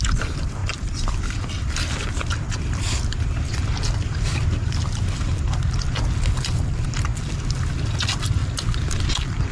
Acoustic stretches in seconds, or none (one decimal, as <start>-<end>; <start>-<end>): 7.1-7.7; 8.4-9.1